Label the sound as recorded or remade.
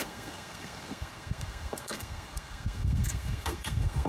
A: remade